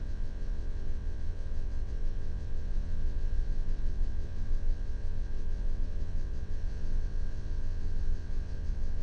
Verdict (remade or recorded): remade